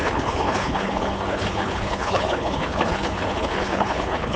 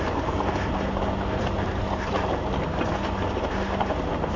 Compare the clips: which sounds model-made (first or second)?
first